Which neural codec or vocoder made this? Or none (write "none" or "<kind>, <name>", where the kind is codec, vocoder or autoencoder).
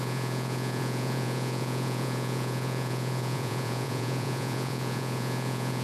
vocoder, Vocos